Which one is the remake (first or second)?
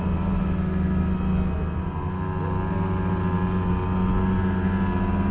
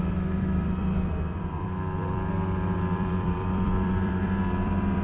second